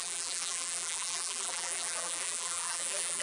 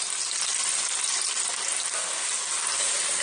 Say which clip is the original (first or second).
second